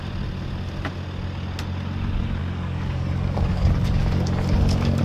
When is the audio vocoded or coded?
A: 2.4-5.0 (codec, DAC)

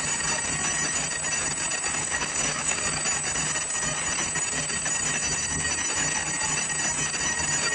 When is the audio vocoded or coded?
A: 2.0-2.8 (codec, DAC)

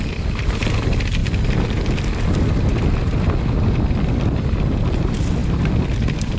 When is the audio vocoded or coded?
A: none

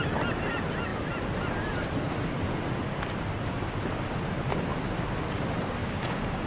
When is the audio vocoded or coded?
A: 5.8-6.5 (codec, DAC)

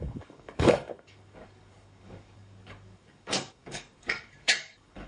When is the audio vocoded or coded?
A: 0.0-5.1 (codec, DAC)